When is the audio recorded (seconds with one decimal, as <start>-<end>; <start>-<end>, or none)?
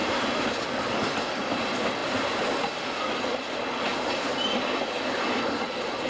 0.0-6.1